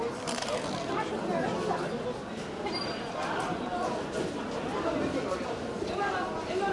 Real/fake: real